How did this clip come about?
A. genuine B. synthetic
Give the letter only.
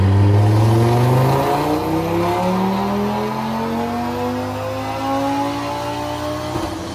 A